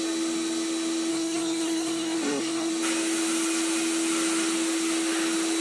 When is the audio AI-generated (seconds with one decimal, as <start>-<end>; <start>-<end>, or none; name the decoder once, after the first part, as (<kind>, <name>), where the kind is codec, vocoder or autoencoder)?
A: 1.1-2.7 (codec, SNAC)